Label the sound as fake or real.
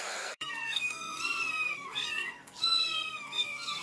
fake